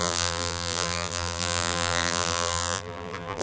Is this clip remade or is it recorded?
remade